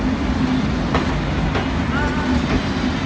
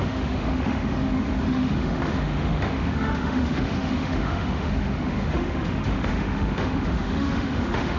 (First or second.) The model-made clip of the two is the second